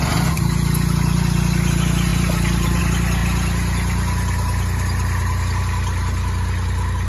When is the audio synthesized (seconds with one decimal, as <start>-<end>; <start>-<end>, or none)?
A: 2.1-2.8